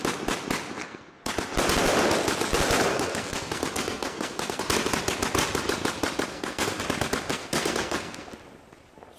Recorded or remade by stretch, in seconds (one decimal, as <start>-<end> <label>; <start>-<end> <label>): 0.0-0.8 recorded; 0.8-1.3 remade; 1.3-2.9 recorded; 2.9-4.6 remade; 4.6-6.3 recorded; 6.3-6.8 remade; 6.8-7.3 recorded; 7.3-8.3 remade; 8.3-9.2 recorded